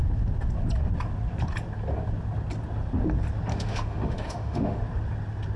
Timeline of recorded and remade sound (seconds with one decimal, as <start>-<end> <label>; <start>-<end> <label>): 0.0-3.5 recorded; 3.5-4.8 remade; 4.8-5.6 recorded

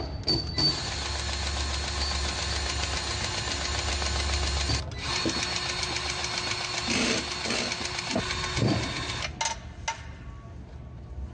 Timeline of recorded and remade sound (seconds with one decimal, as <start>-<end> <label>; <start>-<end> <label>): 0.0-11.3 recorded

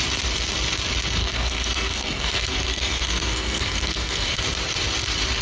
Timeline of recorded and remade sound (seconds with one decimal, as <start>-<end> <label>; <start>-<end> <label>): 0.0-1.2 recorded; 1.2-4.4 remade; 4.4-5.4 recorded